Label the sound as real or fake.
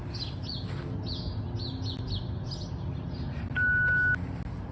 real